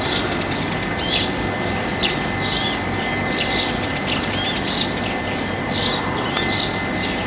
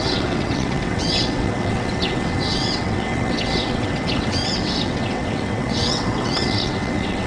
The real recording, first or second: first